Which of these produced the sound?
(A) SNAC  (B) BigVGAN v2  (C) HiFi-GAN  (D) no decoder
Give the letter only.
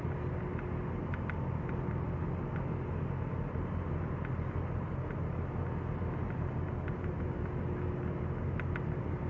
D